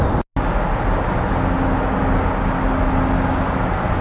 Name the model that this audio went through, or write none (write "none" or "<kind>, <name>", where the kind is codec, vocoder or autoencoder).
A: none